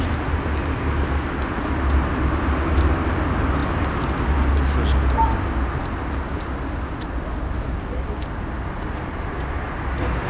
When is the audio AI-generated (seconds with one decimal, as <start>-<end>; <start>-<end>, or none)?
none